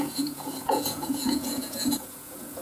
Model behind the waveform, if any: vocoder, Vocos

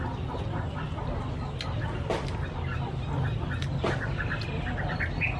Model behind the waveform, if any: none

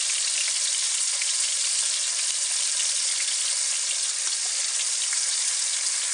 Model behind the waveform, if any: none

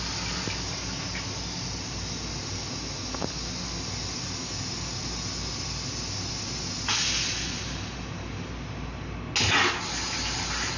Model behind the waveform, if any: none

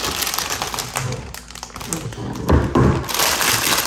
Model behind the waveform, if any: none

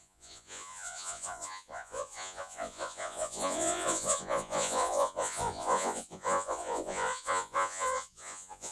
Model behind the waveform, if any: vocoder, Vocos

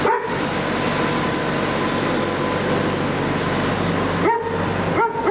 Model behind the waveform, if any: none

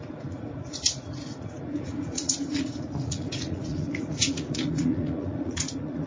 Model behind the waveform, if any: vocoder, Vocos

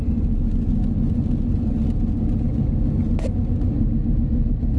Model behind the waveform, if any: none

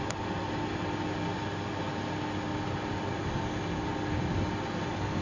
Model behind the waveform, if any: none